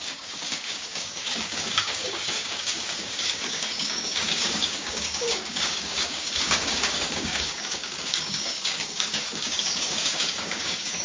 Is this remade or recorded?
remade